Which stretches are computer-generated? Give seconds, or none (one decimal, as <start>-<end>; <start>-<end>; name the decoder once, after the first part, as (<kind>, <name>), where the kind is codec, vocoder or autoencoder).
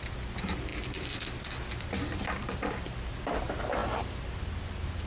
none